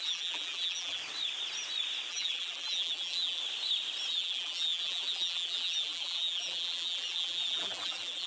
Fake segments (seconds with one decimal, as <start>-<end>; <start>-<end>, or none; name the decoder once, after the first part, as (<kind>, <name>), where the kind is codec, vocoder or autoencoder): 0.0-1.0 (vocoder, BigVGAN v2); 2.1-3.4; 4.1-8.3